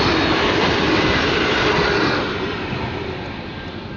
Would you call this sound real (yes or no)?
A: yes